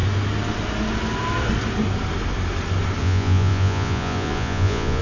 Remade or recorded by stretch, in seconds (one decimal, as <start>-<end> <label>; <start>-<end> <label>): 0.0-3.0 recorded; 3.0-5.0 remade